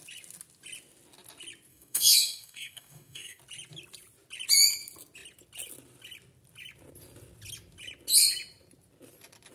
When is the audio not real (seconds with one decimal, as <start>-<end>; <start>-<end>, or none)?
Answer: 1.7-3.4